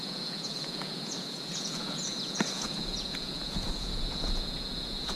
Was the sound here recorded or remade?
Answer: remade